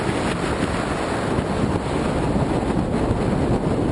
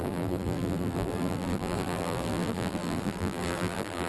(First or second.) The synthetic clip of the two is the second